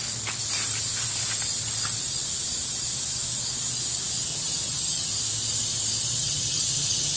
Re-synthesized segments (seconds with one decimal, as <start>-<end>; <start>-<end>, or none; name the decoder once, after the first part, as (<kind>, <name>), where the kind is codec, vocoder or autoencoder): 4.3-5.1 (vocoder, HiFi-GAN); 6.2-7.2